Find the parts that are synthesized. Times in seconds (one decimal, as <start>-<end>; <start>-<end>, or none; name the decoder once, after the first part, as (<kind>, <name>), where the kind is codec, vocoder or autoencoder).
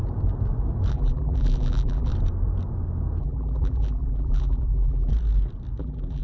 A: 0.9-2.1 (vocoder, BigVGAN v2); 3.2-5.1; 5.8-6.2